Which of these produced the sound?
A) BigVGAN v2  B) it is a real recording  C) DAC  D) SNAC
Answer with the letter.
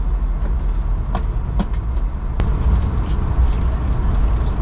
B